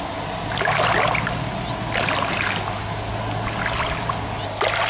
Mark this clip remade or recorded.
recorded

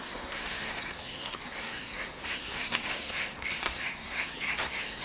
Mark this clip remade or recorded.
remade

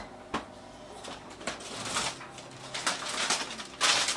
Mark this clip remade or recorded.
recorded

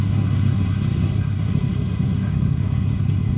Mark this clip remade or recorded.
remade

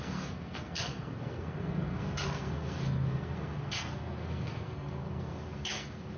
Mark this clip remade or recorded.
remade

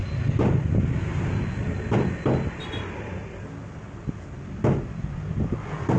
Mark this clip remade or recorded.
recorded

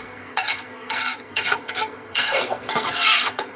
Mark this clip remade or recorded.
remade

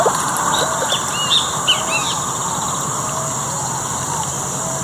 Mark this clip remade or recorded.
recorded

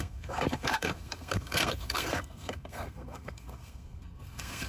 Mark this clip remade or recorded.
remade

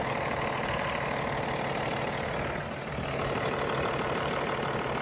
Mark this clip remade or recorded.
recorded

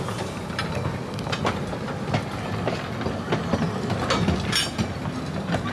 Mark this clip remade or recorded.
recorded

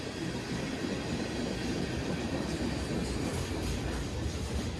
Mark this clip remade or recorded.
recorded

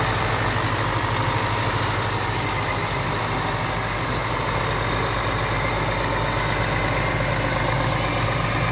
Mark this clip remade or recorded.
recorded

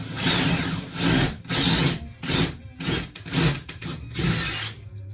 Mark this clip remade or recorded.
recorded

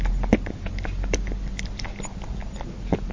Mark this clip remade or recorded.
recorded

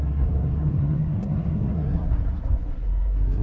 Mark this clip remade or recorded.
remade